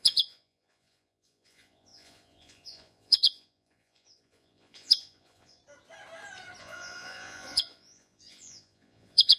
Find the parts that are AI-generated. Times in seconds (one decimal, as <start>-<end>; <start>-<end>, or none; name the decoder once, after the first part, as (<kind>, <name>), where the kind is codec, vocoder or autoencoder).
0.0-5.6 (vocoder, Vocos); 6.6-9.4